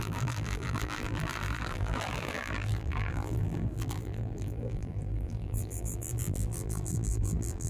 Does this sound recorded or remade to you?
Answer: remade